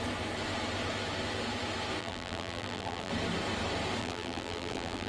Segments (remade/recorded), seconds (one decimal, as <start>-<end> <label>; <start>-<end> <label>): 0.0-2.0 recorded; 2.0-3.1 remade; 3.1-4.0 recorded; 4.0-5.1 remade